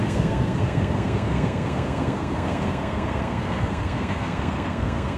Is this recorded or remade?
remade